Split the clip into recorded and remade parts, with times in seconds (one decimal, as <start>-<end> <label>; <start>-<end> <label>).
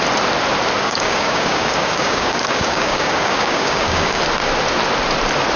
0.0-0.8 recorded; 0.8-4.2 remade; 4.2-5.6 recorded